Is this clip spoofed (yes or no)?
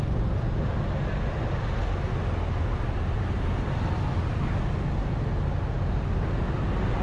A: no